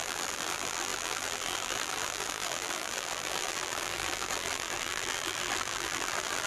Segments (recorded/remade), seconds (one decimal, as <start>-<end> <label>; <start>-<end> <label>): 0.0-6.5 remade